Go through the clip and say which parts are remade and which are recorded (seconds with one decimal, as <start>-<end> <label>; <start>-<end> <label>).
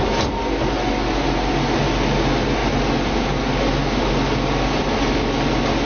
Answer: 0.0-5.8 recorded